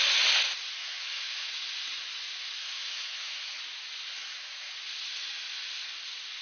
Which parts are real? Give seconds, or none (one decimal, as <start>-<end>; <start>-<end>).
0.0-0.8; 1.5-2.6; 3.6-4.1; 4.7-6.4